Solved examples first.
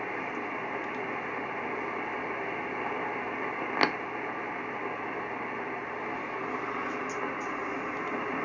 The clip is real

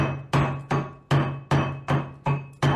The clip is real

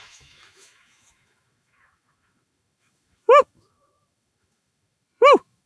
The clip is fake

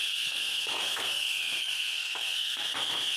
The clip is fake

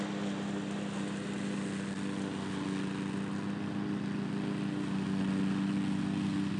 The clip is real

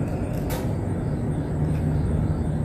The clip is real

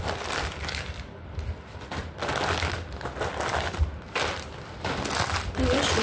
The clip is real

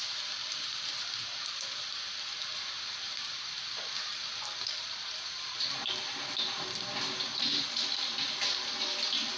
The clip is fake